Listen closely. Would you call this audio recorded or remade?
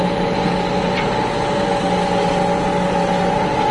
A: recorded